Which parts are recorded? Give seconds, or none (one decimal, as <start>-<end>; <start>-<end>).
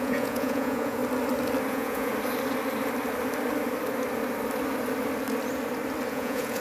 1.0-1.7; 2.1-6.1